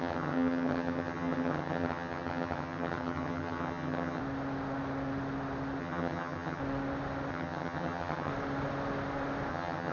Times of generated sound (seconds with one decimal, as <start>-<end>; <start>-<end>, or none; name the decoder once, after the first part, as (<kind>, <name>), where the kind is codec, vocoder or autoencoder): 0.0-4.2 (vocoder, HiFi-GAN); 5.8-6.6; 7.3-8.3; 9.5-9.9